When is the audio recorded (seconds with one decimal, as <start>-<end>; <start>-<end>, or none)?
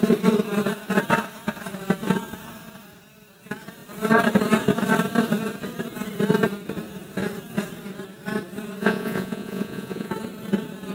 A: 0.0-8.8; 10.1-10.9